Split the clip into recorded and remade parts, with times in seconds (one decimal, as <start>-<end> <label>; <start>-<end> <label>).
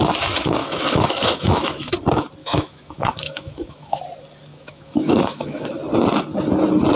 0.0-0.6 recorded; 0.6-1.9 remade; 1.9-2.4 recorded; 2.4-4.0 remade; 4.0-4.5 recorded; 4.5-5.7 remade; 5.7-7.0 recorded